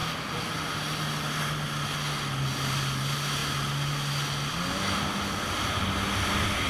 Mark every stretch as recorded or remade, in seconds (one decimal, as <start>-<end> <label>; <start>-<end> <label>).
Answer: 0.0-6.7 recorded